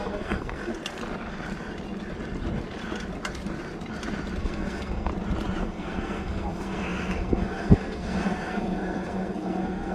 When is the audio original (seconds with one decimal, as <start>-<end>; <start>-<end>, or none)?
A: 0.7-4.4; 5.1-5.6